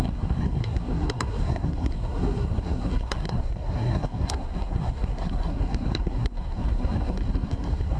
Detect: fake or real fake